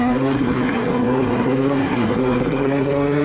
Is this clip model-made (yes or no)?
yes